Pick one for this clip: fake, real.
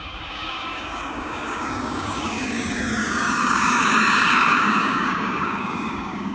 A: fake